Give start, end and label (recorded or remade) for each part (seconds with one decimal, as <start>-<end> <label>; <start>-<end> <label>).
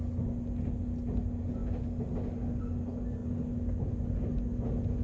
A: 0.0-5.0 recorded